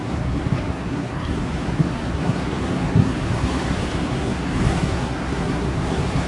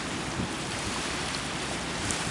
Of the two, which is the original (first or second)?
second